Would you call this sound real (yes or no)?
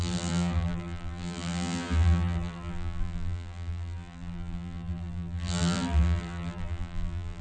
no